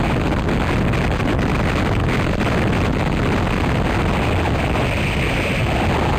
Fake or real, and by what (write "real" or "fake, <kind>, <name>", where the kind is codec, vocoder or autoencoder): real